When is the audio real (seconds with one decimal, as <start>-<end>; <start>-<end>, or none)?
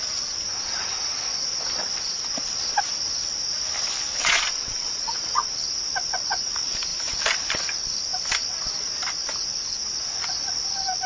0.0-4.2; 5.5-11.1